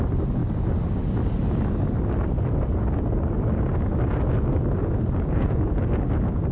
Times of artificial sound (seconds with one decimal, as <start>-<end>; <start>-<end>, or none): 4.8-5.8